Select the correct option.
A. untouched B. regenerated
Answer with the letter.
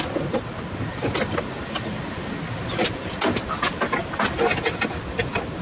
A